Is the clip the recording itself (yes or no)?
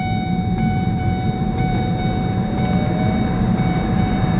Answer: no